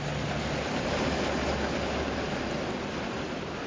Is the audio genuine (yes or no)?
yes